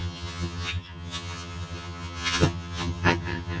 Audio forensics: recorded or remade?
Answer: remade